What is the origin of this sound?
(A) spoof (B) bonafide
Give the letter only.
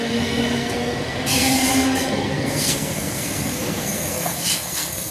A